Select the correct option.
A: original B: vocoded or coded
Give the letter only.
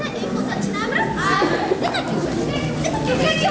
A